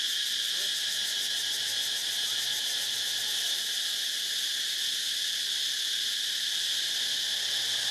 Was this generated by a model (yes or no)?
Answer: no